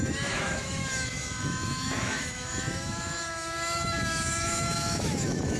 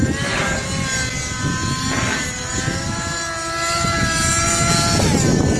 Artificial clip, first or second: first